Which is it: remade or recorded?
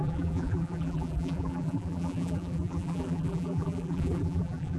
remade